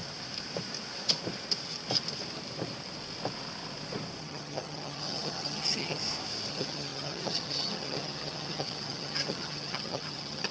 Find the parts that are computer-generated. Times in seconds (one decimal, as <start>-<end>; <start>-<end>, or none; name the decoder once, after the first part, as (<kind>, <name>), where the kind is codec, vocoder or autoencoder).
4.2-6.0 (vocoder, HiFi-GAN); 6.5-10.5